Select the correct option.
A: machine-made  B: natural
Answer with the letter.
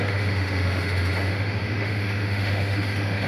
A